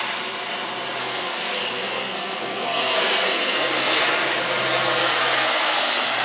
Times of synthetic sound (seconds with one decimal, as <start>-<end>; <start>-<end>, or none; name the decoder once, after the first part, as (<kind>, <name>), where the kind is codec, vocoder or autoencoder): 1.0-4.0 (codec, SNAC); 5.2-5.8